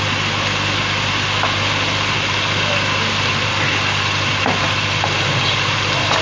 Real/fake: real